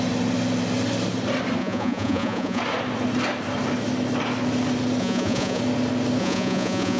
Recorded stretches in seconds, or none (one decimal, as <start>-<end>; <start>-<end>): 0.0-1.6; 2.6-5.0; 5.6-6.2